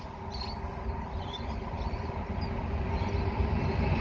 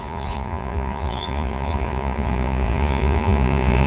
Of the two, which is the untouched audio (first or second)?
first